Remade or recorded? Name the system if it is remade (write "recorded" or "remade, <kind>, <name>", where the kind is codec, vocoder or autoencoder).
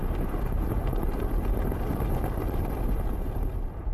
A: recorded